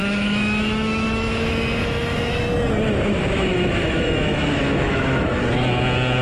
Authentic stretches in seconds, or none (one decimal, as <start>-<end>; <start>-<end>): 2.4-3.2; 5.4-6.2